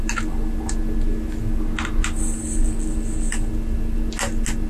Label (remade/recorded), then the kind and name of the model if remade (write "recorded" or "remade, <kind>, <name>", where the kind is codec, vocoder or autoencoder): recorded